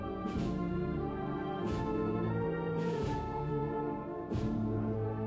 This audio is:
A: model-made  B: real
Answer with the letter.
A